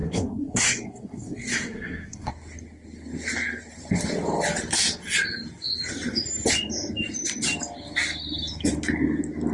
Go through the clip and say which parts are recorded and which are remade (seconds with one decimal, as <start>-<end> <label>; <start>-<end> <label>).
0.0-2.3 remade; 2.3-9.5 recorded